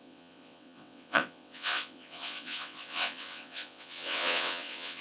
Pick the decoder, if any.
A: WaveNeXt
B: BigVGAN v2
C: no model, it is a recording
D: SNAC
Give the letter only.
A